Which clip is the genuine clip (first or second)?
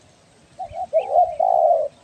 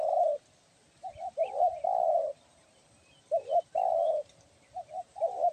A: first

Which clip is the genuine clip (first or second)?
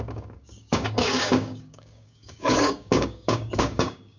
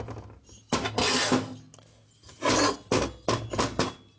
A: second